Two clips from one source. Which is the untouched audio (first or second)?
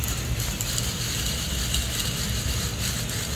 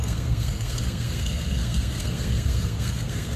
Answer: first